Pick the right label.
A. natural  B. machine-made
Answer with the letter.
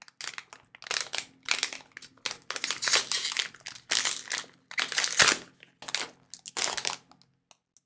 A